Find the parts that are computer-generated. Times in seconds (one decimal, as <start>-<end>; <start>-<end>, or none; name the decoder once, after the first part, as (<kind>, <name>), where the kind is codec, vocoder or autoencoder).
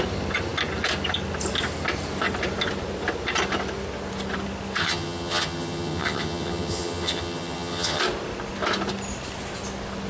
4.8-8.0 (vocoder, HiFi-GAN)